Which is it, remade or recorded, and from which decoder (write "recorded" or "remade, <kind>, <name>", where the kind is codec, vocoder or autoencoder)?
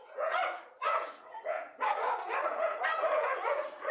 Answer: remade, vocoder, Vocos